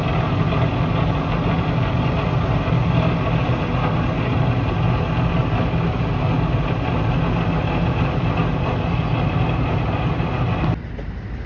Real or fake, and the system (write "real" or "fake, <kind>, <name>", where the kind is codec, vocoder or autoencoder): real